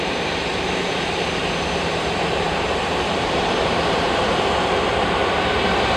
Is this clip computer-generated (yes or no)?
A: yes